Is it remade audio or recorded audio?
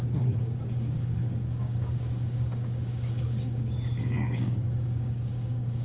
remade